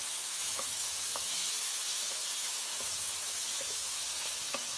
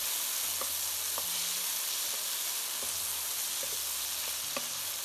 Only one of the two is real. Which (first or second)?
second